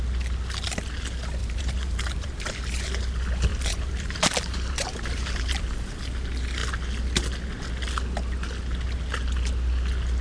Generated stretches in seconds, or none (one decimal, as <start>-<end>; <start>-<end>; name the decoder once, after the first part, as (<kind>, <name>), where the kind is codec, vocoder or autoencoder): 1.4-2.6 (vocoder, BigVGAN v2); 3.5-6.0

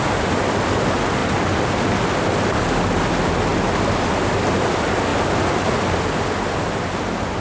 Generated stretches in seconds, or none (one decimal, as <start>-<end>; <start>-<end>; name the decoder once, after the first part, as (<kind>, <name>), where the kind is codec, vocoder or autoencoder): none

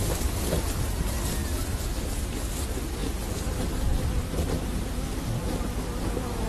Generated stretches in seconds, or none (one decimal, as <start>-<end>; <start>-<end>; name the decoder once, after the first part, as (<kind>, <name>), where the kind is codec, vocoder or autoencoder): none

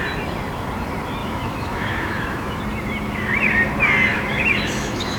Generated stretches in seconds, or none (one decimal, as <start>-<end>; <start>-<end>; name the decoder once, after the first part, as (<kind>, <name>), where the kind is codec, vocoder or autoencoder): 1.2-2.6 (autoencoder, DAC-VAE); 4.1-5.2

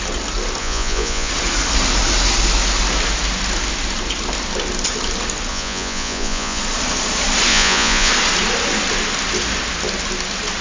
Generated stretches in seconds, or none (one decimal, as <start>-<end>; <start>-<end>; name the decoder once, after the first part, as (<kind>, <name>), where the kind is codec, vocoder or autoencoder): 0.6-1.3 (vocoder, Vocos); 5.5-6.6; 7.5-8.1

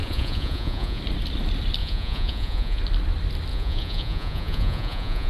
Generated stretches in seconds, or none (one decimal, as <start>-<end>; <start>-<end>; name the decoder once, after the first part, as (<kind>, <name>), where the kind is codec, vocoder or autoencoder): 0.0-1.0 (vocoder, Vocos); 1.8-2.8; 3.5-5.3

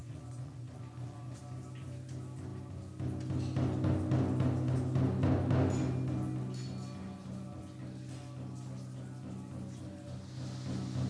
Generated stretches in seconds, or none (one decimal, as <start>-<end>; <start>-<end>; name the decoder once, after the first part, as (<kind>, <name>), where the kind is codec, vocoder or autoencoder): 0.0-1.4 (vocoder, Vocos)